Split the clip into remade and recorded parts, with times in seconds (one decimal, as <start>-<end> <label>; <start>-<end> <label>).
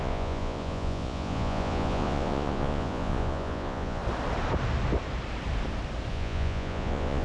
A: 0.0-4.0 remade; 4.0-6.1 recorded; 6.1-7.2 remade